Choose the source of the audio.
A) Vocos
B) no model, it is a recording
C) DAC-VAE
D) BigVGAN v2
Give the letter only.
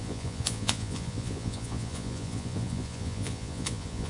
A